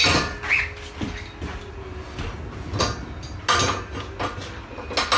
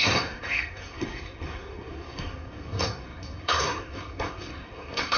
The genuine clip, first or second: first